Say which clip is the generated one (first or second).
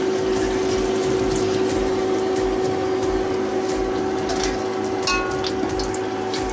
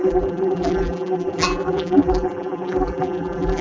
second